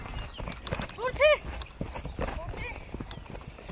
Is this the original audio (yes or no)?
yes